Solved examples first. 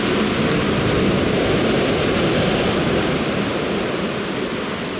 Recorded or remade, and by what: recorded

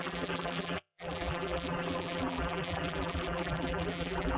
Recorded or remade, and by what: remade, vocoder, BigVGAN v2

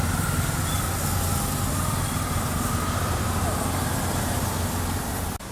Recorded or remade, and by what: recorded